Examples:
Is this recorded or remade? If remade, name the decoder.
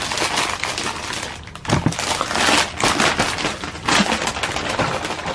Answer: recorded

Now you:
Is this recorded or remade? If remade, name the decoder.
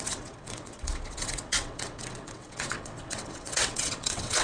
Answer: remade, vocoder, WaveNeXt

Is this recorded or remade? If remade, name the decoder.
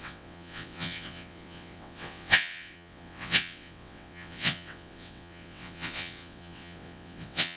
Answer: remade, vocoder, WaveNeXt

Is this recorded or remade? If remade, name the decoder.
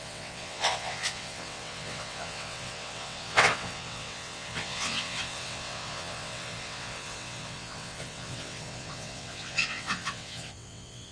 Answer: remade, vocoder, WaveNeXt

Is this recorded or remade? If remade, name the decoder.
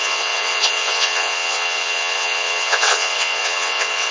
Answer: remade, vocoder, WaveNeXt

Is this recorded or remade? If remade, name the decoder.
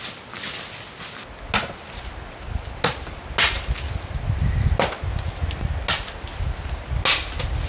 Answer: recorded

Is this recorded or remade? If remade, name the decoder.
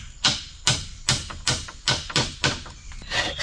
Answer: recorded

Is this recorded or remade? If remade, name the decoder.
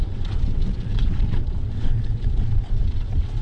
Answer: remade, vocoder, WaveNeXt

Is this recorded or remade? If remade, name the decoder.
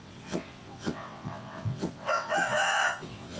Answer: remade, vocoder, WaveNeXt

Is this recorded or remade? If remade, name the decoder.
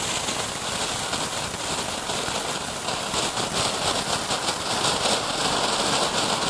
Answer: recorded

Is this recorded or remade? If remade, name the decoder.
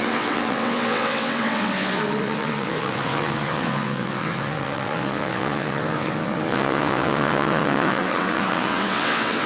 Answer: remade, vocoder, WaveNeXt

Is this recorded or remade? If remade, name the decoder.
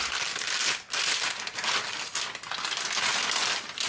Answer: recorded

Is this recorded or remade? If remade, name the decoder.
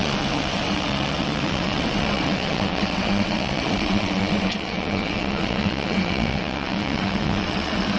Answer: remade, vocoder, WaveNeXt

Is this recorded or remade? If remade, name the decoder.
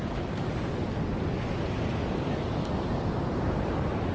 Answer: recorded